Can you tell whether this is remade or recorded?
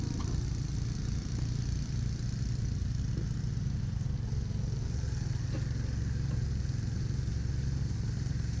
recorded